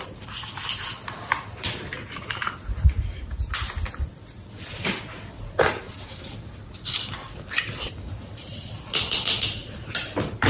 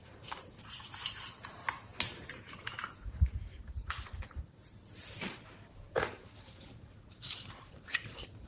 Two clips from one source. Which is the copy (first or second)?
second